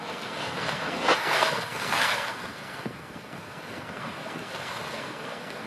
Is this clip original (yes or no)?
no